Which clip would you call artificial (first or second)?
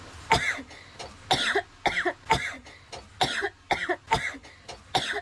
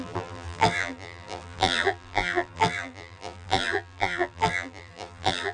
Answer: second